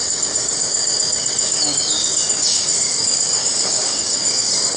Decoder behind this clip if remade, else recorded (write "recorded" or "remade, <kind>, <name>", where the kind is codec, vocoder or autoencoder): remade, codec, DAC